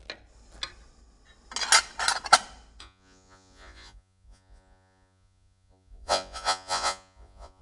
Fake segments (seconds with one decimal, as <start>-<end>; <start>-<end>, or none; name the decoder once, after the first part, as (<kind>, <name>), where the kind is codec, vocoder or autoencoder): 2.8-7.6 (vocoder, Vocos)